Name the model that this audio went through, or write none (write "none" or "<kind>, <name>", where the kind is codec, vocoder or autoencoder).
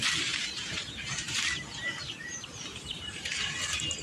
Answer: vocoder, BigVGAN v2